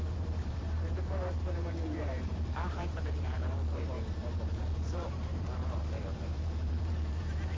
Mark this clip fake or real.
fake